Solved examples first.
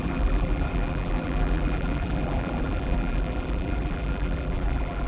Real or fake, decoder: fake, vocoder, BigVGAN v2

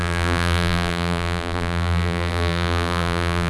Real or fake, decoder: fake, vocoder, BigVGAN v2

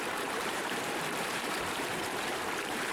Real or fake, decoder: fake, vocoder, BigVGAN v2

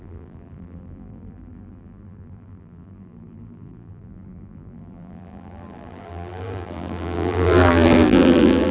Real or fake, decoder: fake, vocoder, BigVGAN v2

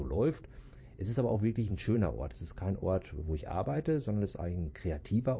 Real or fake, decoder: fake, vocoder, BigVGAN v2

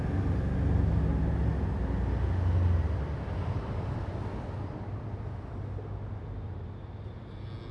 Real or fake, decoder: real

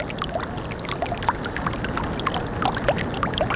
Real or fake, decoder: real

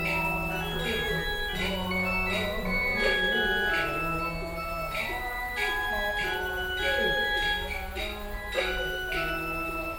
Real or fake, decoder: real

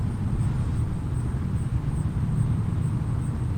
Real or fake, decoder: real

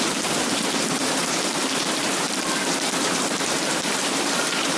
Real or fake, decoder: fake, vocoder, BigVGAN v2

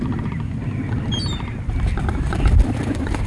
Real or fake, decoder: fake, vocoder, BigVGAN v2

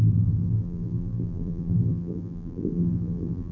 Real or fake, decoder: fake, vocoder, BigVGAN v2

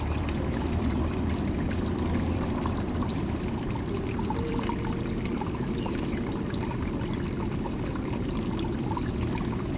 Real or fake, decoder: fake, vocoder, BigVGAN v2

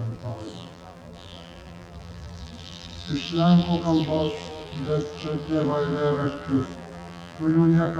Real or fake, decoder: fake, vocoder, BigVGAN v2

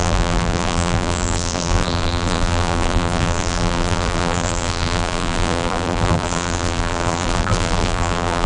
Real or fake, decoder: fake, vocoder, BigVGAN v2